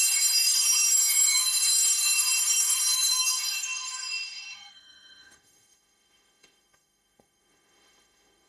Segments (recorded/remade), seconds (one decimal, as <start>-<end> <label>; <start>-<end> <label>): 0.0-8.5 remade